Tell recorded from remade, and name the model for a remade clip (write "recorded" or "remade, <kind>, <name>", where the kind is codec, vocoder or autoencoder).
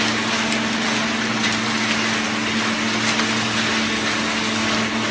recorded